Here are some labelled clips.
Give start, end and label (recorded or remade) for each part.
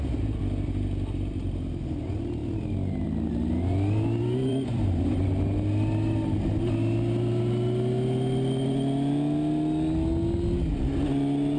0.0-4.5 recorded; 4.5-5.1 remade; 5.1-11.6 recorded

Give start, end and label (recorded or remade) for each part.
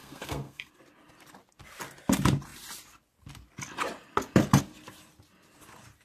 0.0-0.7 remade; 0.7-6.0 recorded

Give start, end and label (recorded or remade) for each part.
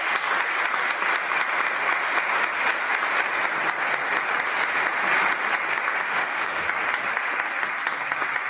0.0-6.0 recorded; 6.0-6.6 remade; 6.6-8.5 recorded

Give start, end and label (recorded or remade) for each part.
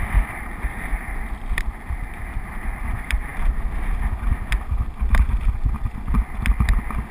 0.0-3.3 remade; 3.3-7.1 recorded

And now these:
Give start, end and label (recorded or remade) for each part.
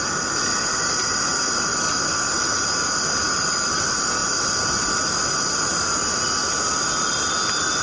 0.0-7.8 recorded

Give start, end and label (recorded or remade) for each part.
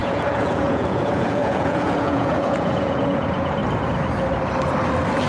0.0-3.6 remade; 3.6-5.3 recorded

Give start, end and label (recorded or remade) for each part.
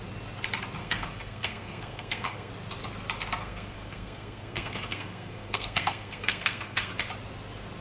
0.0-0.8 recorded; 0.8-2.5 remade; 2.5-3.4 recorded; 3.4-6.9 remade; 6.9-7.8 recorded